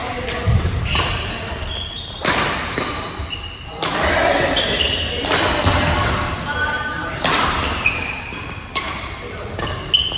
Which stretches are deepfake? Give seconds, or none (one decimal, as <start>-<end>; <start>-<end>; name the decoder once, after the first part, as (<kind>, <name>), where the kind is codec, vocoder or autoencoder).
none